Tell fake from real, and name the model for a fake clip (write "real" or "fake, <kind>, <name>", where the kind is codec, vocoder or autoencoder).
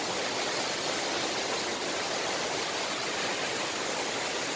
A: real